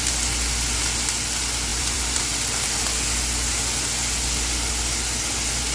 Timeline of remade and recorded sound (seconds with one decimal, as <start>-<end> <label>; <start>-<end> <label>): 0.0-1.7 recorded; 1.7-2.2 remade; 2.2-5.7 recorded